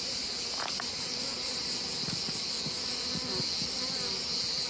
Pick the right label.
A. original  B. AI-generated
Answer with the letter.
A